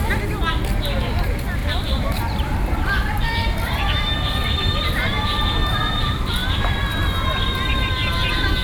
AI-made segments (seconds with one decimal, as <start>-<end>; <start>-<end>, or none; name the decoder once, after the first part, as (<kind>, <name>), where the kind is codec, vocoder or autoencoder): 1.6-4.8 (vocoder, BigVGAN v2)